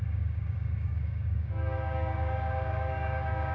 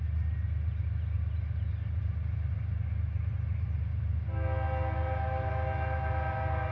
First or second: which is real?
second